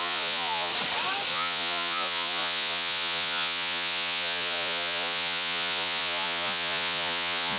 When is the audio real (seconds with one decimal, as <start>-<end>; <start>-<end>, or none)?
0.7-1.3